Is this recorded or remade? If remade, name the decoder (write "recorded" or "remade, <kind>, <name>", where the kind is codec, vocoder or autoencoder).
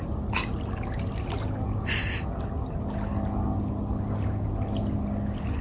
recorded